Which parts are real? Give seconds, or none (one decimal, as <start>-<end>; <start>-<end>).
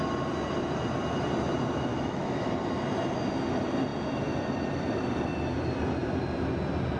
0.0-1.9; 2.5-7.0